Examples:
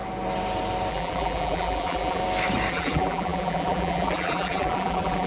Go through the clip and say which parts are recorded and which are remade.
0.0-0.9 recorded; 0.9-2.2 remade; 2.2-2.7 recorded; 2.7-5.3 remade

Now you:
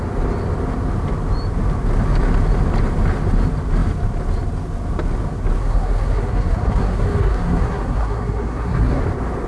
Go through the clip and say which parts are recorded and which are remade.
0.0-5.6 recorded; 5.6-9.0 remade; 9.0-9.5 recorded